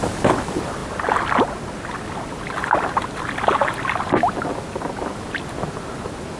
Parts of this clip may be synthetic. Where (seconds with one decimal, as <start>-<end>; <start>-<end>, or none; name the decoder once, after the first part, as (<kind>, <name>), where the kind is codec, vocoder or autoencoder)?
none